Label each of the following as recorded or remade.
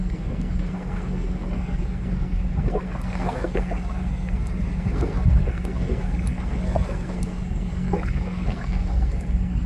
remade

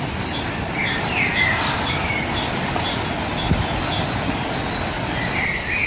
recorded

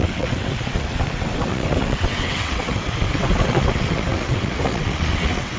remade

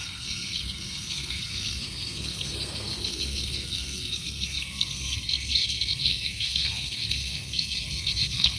remade